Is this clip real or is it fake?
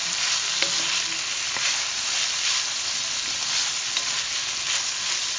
real